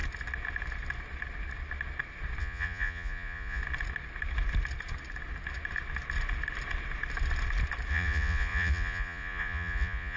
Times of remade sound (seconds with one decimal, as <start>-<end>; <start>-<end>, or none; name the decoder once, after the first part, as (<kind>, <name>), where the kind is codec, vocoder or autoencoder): 2.4-3.6 (vocoder, Vocos); 7.9-10.2